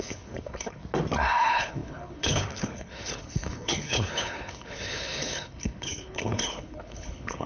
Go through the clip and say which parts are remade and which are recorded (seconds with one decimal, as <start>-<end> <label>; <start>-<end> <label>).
0.0-0.8 remade; 0.8-1.4 recorded; 1.4-7.5 remade